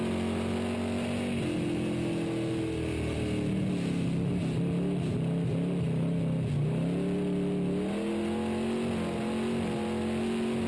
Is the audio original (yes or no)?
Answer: yes